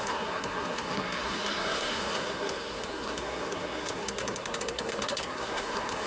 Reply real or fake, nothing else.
fake